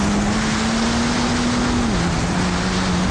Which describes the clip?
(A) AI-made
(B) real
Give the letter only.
B